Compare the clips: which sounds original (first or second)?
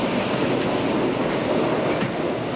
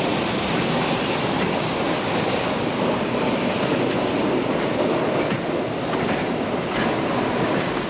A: first